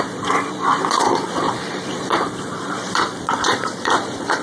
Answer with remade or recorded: remade